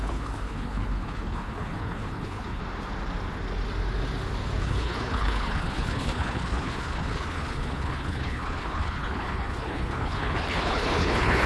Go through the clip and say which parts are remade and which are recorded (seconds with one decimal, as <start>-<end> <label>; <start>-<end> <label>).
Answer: 0.0-2.6 remade; 2.6-4.6 recorded; 4.6-11.5 remade